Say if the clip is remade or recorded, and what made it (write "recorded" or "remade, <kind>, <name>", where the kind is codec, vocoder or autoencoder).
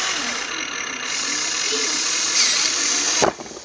recorded